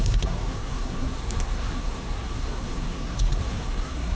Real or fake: fake